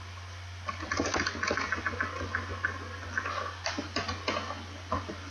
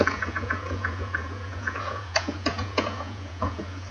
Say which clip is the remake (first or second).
second